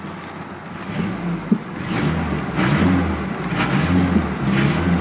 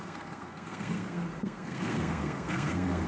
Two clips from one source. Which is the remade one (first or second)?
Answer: second